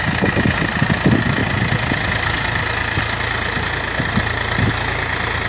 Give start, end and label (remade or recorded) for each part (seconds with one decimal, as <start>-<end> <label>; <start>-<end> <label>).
0.0-5.5 recorded